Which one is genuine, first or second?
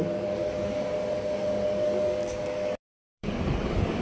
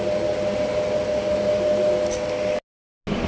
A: second